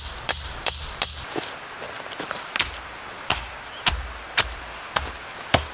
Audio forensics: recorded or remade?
remade